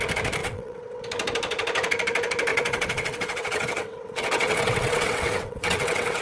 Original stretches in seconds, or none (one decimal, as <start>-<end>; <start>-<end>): 0.0-0.4; 1.0-2.5